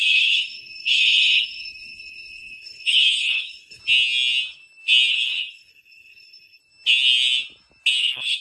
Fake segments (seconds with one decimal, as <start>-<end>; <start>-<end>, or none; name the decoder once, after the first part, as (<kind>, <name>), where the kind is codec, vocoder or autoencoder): 0.0-3.8 (codec, HILCodec); 5.1-6.6; 8.0-8.4